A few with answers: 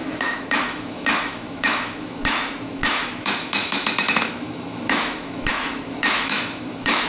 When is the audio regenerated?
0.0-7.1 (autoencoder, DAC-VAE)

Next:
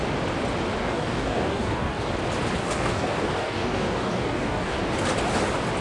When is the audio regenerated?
0.8-2.1 (codec, DAC); 2.6-4.8

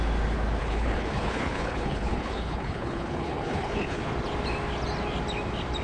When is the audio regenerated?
0.6-4.1 (codec, HILCodec)

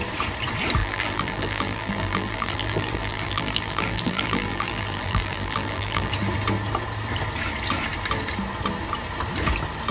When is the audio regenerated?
0.8-6.1 (vocoder, BigVGAN v2)

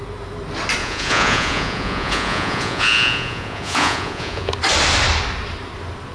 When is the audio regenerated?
0.8-4.5 (vocoder, Vocos)